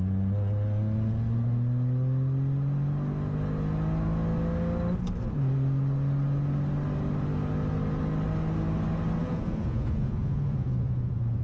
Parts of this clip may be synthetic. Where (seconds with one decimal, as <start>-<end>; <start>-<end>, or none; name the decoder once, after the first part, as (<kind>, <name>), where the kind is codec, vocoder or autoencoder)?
9.2-11.4 (vocoder, Vocos)